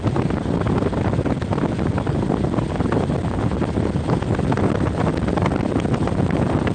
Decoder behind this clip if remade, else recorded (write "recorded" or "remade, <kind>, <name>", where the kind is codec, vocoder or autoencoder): recorded